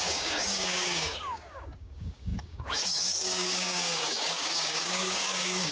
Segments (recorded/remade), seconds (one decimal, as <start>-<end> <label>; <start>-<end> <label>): 0.0-5.7 remade